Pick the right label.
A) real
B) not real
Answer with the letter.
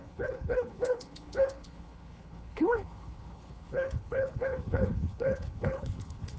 B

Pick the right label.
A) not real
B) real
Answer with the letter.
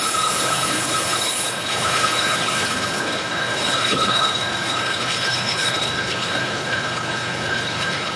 A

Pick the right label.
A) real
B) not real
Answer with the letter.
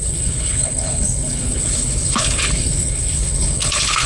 B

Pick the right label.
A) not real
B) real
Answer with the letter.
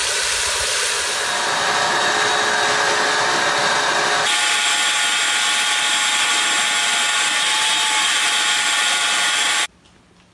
B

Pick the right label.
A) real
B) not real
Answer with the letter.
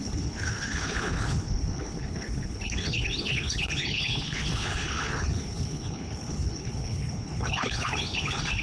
B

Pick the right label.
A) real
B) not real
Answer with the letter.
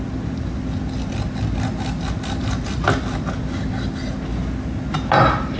A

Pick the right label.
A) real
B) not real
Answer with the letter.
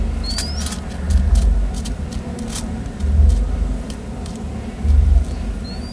A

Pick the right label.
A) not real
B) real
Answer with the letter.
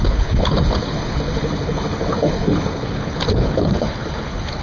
A